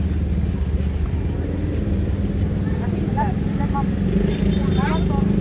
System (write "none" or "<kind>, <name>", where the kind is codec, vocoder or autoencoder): none